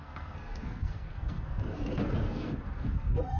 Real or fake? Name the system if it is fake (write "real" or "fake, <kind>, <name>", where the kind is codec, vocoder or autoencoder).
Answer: fake, codec, SNAC